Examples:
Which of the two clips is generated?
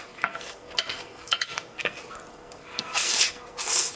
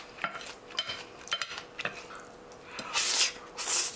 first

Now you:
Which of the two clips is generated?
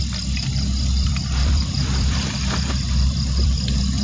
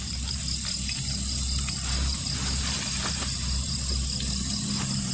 first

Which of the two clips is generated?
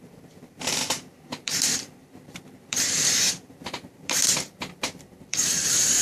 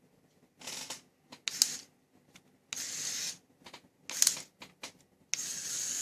first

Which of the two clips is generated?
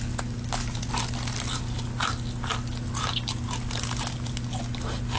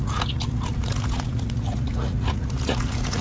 second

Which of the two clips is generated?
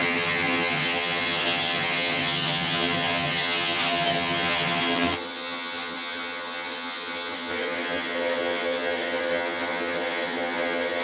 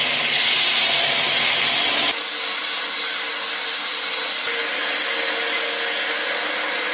first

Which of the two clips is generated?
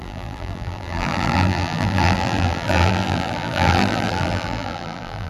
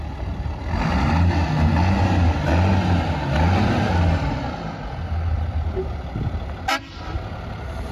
first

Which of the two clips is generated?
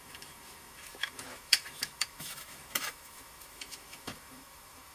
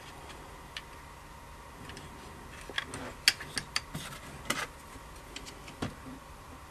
first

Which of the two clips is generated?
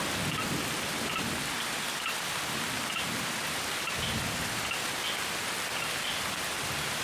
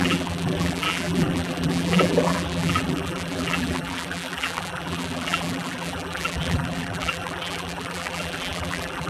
second